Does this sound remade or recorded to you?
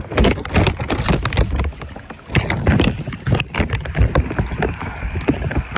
recorded